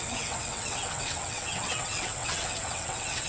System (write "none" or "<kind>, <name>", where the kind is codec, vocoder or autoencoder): vocoder, WaveNeXt